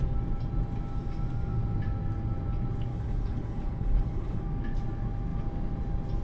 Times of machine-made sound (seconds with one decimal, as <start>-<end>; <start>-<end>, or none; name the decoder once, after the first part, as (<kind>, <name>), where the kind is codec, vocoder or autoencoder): 2.9-4.4 (codec, HILCodec)